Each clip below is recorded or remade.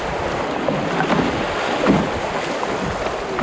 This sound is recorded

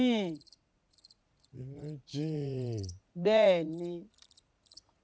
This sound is remade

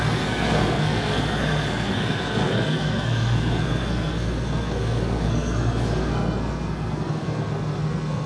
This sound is remade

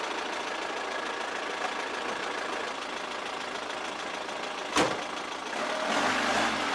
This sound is recorded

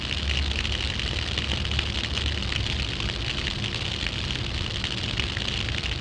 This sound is recorded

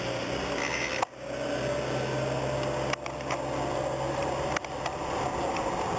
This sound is recorded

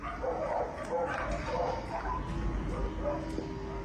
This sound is recorded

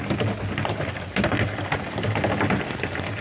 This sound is recorded